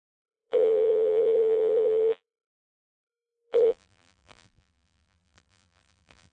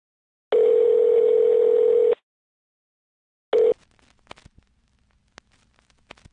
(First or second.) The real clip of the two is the second